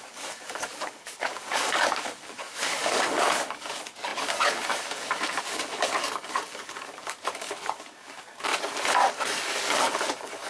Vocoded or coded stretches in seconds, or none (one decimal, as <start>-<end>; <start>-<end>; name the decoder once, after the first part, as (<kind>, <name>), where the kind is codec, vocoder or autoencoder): 0.0-8.5 (codec, DAC); 9.1-10.5